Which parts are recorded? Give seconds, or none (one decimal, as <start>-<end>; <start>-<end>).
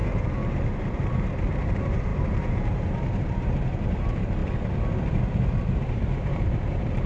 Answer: 0.0-1.5; 4.4-5.6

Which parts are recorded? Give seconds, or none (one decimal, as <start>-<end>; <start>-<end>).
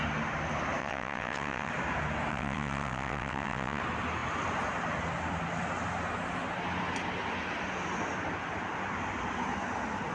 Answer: 0.0-0.8; 1.7-2.3; 3.8-10.1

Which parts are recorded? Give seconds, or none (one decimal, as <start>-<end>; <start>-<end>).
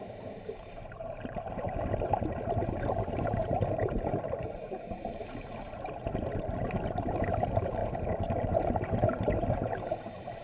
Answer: 7.8-8.4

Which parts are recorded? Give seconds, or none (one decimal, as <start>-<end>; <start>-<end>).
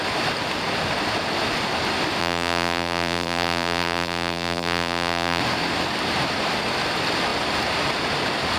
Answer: 0.0-2.2; 5.4-8.6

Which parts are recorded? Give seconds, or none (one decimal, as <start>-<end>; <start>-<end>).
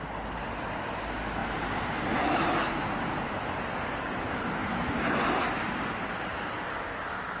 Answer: 0.0-1.4; 4.7-7.4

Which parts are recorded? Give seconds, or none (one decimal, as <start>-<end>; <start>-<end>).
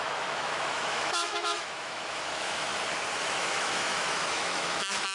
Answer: 2.7-3.2